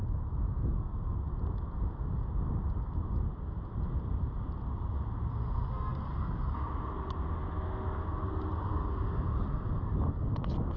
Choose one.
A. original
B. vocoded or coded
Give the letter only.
A